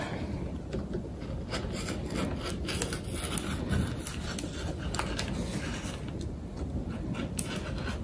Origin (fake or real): real